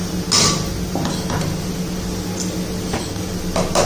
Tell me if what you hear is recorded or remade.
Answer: recorded